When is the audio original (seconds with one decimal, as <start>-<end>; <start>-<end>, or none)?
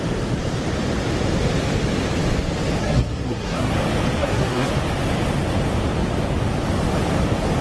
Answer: 0.0-2.8; 3.7-4.2; 4.7-7.6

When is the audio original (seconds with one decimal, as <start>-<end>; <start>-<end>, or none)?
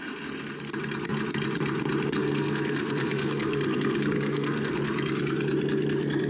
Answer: 0.0-2.2; 4.7-6.3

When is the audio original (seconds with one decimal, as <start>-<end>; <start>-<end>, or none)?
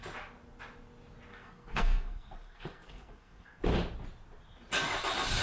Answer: 0.0-1.3; 3.6-5.4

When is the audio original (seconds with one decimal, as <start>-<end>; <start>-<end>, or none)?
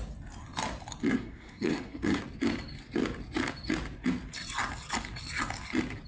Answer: 0.0-1.1; 2.2-6.1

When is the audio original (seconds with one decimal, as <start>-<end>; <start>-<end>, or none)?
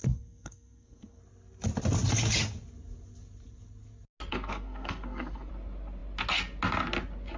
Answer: 1.2-4.3; 5.5-7.4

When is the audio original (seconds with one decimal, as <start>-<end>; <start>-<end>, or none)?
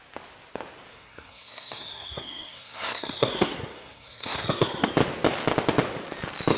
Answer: 0.0-0.9; 4.9-6.6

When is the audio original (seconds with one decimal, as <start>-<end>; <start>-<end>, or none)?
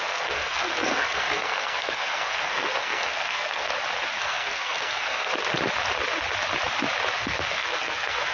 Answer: 3.7-4.2; 5.3-7.2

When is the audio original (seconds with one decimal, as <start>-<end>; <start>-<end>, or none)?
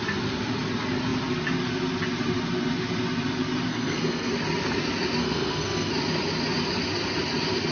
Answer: 0.0-3.7; 4.3-5.2; 5.9-7.7